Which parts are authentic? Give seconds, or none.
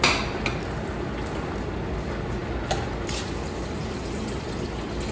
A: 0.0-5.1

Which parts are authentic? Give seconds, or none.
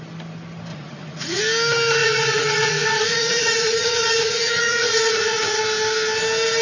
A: 0.0-0.7; 1.4-2.0; 5.6-6.6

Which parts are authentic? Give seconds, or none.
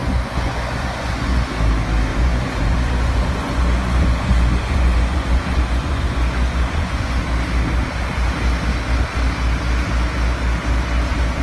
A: 1.5-2.1; 7.2-11.4